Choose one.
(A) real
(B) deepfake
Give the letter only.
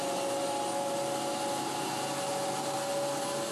A